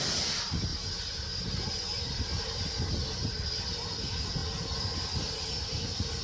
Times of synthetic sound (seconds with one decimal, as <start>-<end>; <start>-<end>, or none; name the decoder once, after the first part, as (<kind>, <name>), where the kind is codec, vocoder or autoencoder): 0.0-0.7 (vocoder, BigVGAN v2); 2.4-6.2